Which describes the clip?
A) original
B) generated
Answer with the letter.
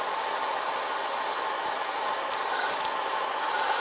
A